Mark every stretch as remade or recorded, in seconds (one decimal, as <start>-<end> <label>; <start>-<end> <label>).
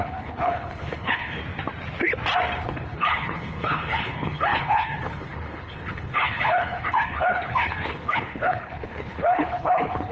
0.0-1.4 remade; 1.4-2.6 recorded; 2.6-10.1 remade